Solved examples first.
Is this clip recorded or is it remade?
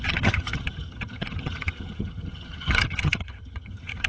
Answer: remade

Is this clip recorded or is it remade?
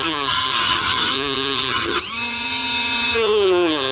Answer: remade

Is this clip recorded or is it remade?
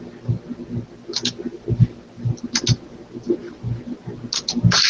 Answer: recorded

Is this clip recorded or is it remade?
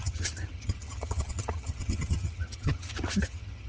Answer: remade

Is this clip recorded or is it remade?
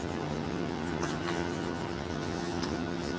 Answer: remade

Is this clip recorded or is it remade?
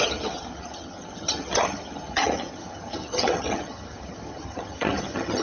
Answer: remade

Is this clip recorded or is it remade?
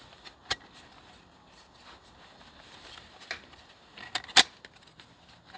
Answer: recorded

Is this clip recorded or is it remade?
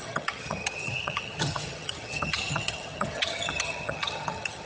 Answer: remade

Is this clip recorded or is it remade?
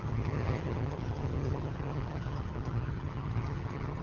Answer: remade